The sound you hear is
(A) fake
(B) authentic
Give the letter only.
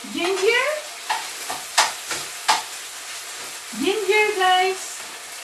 B